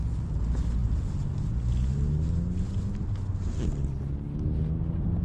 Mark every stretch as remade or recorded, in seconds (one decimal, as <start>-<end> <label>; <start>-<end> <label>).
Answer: 0.0-5.2 recorded